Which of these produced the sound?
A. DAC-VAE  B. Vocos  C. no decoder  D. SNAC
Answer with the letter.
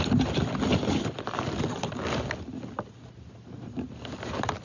C